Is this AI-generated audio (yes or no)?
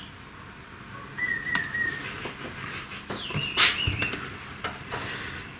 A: no